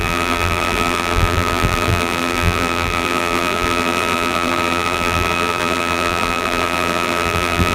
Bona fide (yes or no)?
no